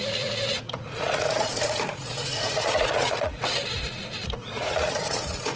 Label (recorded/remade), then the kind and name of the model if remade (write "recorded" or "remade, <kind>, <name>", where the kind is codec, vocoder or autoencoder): remade, vocoder, Vocos